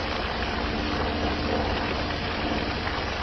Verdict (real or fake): real